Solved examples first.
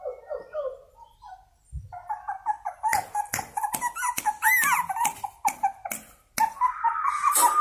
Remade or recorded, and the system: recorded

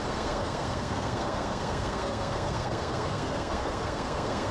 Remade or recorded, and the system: remade, codec, SNAC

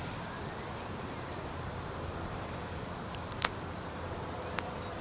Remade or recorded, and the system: remade, vocoder, BigVGAN v2